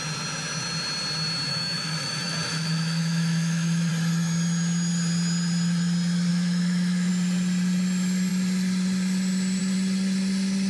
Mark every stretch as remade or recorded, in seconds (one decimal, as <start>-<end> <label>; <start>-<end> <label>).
0.0-1.5 recorded; 1.5-3.9 remade; 3.9-6.3 recorded; 6.3-7.1 remade; 7.1-10.7 recorded